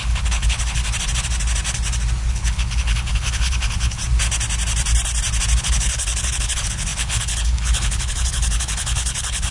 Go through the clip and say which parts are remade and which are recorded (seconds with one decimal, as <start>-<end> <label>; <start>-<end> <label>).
0.0-0.8 remade; 0.8-2.3 recorded; 2.3-4.0 remade; 4.0-5.6 recorded; 5.6-9.5 remade